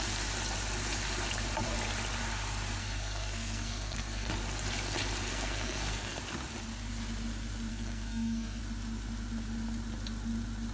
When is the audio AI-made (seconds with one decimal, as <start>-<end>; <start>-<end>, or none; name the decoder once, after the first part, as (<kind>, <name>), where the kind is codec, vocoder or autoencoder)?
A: 2.8-4.3 (codec, SNAC); 5.3-6.2; 7.7-8.6

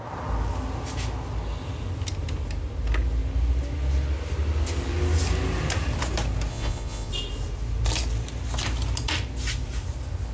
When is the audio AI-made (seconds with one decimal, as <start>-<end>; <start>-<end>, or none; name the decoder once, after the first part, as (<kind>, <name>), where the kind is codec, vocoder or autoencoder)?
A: 6.5-7.1 (vocoder, Vocos)

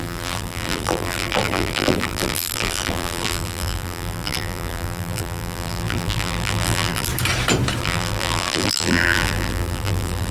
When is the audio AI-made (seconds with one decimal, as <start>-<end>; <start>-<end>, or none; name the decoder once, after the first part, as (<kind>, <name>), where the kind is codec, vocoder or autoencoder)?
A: 0.0-7.1 (vocoder, BigVGAN v2); 7.8-10.3

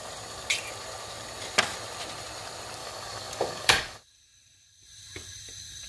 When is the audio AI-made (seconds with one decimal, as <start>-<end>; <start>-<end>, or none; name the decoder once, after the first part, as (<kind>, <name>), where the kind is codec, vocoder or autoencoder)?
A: 2.8-4.0 (codec, DAC)

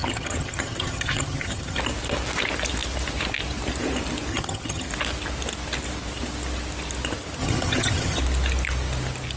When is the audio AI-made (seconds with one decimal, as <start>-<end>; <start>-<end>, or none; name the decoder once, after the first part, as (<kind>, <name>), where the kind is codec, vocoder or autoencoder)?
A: 0.0-1.8 (vocoder, HiFi-GAN); 4.3-4.9; 7.4-8.2